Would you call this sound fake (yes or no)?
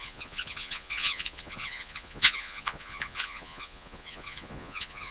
yes